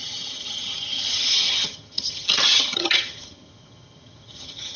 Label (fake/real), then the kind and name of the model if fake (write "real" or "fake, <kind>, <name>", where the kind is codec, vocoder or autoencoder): fake, vocoder, HiFi-GAN